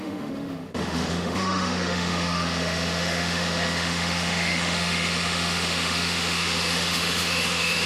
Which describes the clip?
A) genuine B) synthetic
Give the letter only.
B